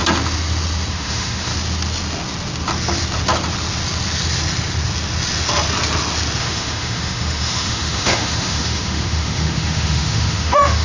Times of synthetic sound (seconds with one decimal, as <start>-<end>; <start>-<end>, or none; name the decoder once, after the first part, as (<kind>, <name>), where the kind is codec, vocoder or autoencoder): 0.9-1.5 (autoencoder, DAC-VAE); 6.4-10.8